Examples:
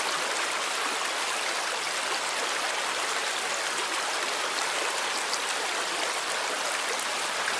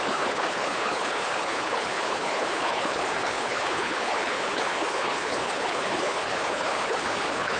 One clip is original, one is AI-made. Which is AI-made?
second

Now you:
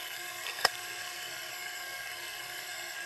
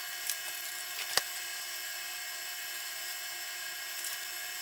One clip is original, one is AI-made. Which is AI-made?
first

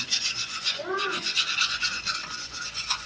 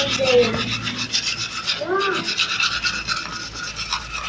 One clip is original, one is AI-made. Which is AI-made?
first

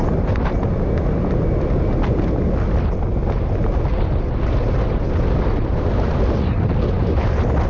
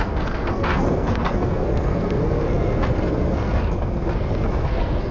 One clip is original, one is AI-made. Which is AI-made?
second